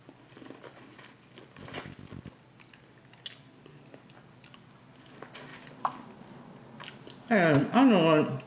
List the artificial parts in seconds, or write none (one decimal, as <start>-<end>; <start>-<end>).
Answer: none